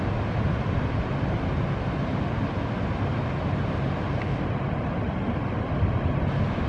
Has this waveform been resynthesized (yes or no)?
no